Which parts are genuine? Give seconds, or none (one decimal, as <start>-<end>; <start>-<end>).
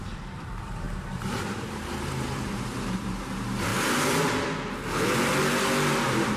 3.7-6.0